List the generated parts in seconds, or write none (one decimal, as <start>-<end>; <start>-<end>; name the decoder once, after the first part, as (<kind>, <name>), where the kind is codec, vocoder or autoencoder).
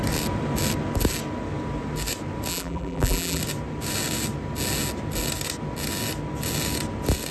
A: 2.5-3.4 (vocoder, BigVGAN v2)